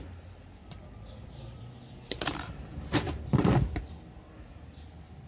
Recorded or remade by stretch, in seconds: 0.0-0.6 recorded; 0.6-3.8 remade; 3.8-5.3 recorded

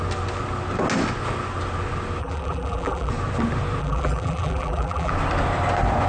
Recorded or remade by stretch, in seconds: 0.0-2.2 recorded; 2.2-3.1 remade; 3.1-3.8 recorded; 3.8-5.1 remade; 5.1-6.1 recorded

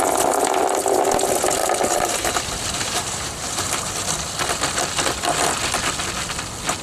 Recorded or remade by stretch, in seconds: 0.0-1.6 recorded; 1.6-3.9 remade; 3.9-6.8 recorded

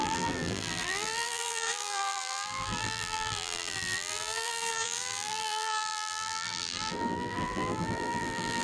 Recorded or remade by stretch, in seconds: 0.0-8.6 remade

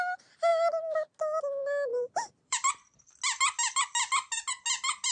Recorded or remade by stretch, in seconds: 0.0-1.9 recorded; 1.9-2.7 remade; 2.7-5.1 recorded

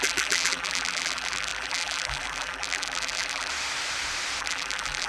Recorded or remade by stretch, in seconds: 0.0-3.5 remade; 3.5-4.4 recorded; 4.4-5.1 remade